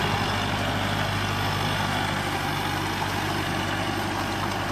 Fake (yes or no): no